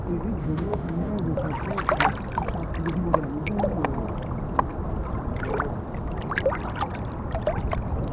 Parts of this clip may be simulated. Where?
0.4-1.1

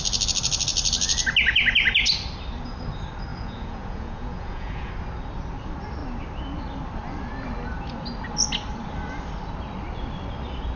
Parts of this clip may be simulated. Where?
3.3-4.9

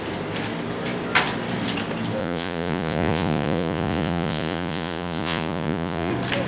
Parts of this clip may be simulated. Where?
2.2-6.1